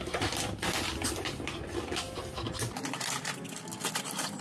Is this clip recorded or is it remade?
recorded